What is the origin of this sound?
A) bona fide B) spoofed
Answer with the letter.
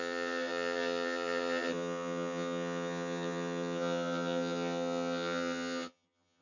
B